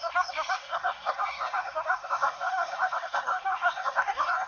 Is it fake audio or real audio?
fake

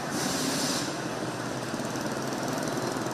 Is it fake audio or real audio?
real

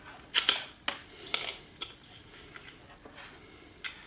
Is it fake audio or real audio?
real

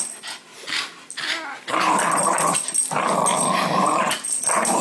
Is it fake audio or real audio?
real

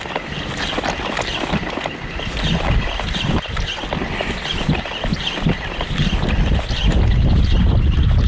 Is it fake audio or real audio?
real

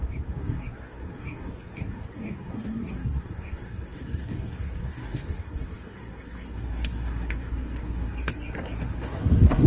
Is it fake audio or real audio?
fake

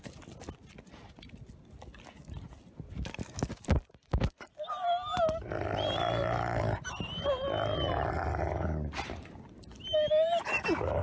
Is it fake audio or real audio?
real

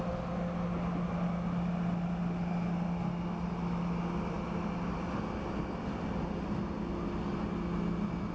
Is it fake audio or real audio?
real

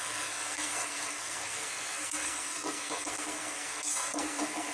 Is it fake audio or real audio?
fake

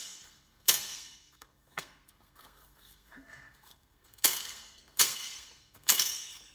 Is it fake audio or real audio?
fake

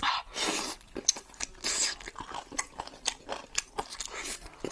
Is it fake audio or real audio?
real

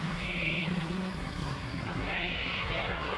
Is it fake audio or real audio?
fake